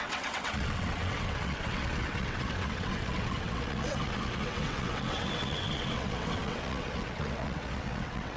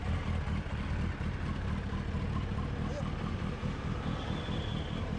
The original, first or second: second